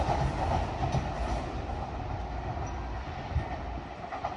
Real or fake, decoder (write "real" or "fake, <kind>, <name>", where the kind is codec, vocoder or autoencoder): real